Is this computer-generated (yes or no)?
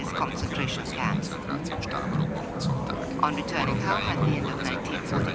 no